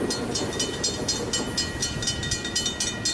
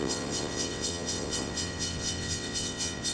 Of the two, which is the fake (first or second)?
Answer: second